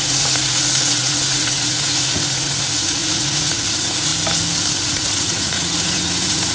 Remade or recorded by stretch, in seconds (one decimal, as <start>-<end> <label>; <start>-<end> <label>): 0.0-4.1 remade; 4.1-4.9 recorded; 4.9-6.5 remade